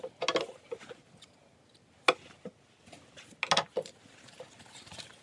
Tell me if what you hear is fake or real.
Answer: real